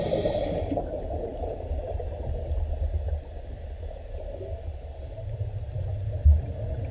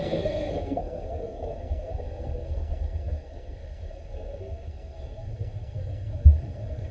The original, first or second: first